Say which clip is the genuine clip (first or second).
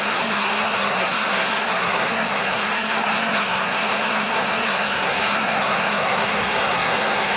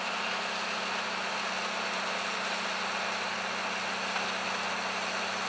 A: second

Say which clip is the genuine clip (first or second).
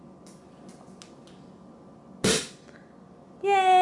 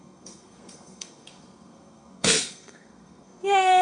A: first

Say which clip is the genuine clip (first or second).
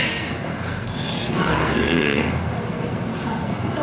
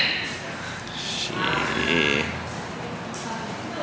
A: second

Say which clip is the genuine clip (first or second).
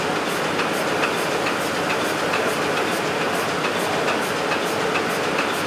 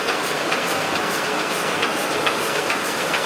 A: first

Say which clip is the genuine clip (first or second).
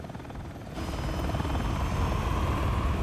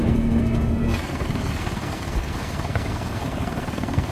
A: first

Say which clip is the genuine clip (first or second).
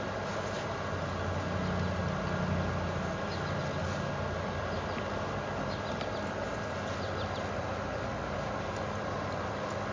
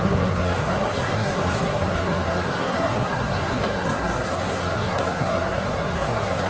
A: first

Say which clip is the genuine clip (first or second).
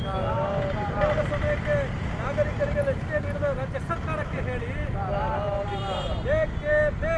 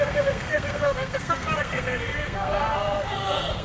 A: first